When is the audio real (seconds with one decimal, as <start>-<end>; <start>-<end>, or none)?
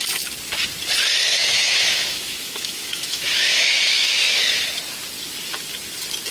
0.0-1.3; 4.4-6.3